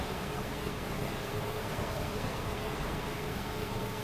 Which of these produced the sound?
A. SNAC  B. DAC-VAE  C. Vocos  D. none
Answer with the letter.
A